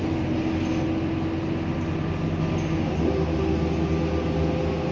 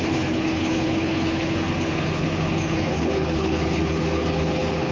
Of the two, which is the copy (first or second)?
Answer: second